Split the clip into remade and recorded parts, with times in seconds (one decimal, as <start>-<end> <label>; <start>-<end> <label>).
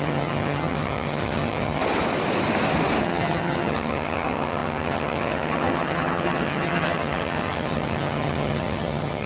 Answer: 0.0-1.8 remade; 1.8-3.0 recorded; 3.0-9.3 remade